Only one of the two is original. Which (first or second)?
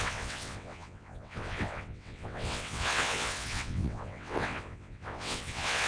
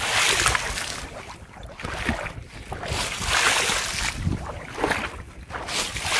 second